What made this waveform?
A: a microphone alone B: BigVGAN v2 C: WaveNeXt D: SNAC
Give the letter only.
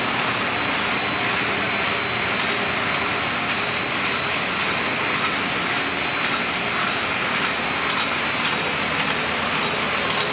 A